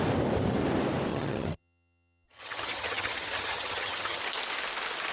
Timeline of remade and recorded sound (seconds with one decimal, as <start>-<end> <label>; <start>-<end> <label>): 0.0-1.1 recorded; 1.1-4.2 remade; 4.2-5.1 recorded